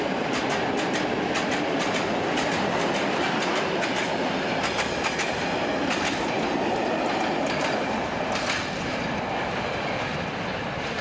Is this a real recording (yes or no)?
yes